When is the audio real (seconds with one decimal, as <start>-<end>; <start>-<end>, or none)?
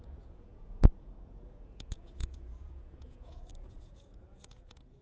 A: none